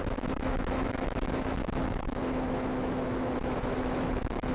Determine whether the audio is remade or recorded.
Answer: remade